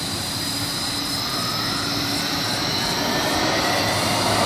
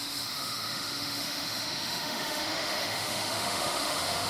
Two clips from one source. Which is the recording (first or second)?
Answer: first